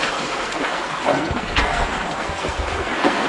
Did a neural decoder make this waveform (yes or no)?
yes